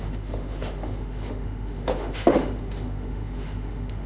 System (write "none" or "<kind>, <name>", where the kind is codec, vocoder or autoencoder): autoencoder, DAC-VAE